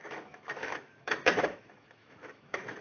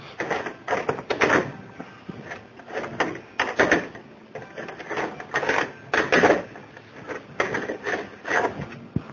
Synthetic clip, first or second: first